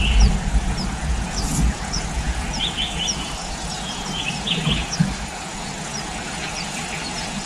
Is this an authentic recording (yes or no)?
no